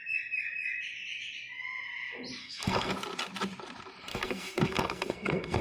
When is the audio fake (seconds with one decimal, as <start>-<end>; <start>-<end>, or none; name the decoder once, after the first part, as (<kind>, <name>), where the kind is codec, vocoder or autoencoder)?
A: 2.4-2.9 (codec, SNAC); 4.1-5.6